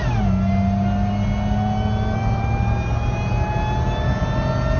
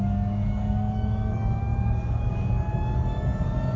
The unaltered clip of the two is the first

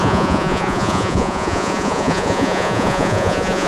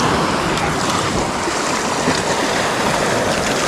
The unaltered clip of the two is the second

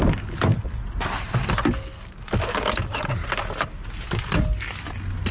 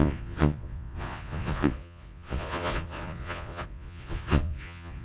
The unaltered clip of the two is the first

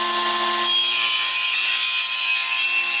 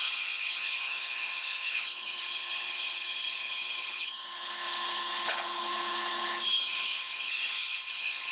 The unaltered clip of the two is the first